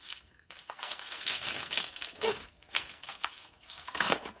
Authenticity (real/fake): fake